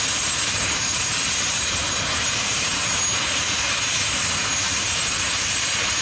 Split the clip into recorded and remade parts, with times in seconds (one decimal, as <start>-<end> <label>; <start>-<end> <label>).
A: 0.0-2.7 remade; 2.7-4.8 recorded; 4.8-6.0 remade

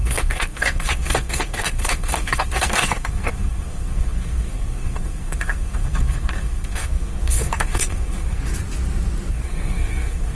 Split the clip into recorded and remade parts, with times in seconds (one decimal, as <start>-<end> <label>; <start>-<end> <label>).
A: 0.0-8.4 remade; 8.4-9.3 recorded; 9.3-10.3 remade

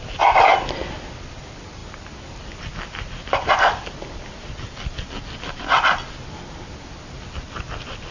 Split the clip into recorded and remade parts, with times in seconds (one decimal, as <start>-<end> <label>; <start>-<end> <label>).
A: 0.0-8.1 recorded

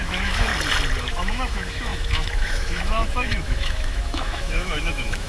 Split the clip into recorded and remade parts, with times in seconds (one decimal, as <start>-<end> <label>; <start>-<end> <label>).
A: 0.0-0.5 remade; 0.5-1.0 recorded; 1.0-5.3 remade

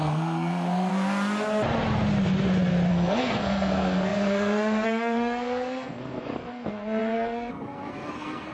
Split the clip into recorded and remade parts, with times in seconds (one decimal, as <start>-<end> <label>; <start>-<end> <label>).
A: 0.0-0.9 remade; 0.9-2.9 recorded; 2.9-8.5 remade